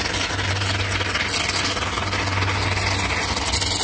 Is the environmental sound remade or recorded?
recorded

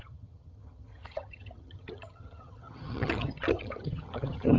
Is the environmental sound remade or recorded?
remade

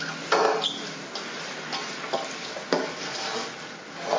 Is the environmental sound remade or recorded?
recorded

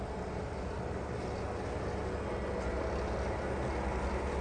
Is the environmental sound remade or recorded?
recorded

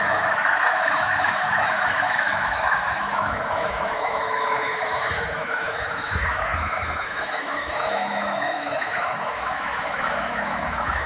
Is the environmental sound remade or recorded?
remade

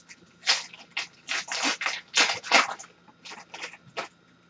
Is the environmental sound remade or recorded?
recorded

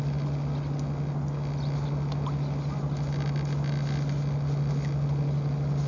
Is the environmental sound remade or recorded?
recorded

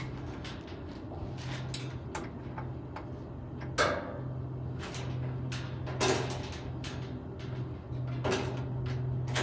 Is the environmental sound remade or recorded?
recorded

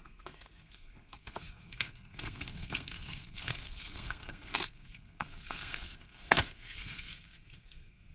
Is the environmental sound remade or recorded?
remade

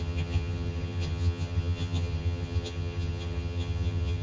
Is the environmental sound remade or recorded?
remade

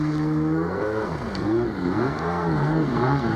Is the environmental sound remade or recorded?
remade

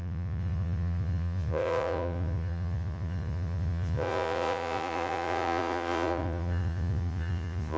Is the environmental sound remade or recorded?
remade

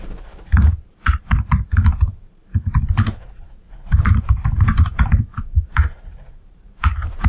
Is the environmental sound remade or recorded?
remade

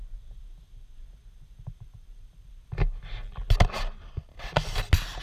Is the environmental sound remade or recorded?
recorded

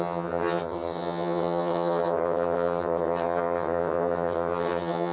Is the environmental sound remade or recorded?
remade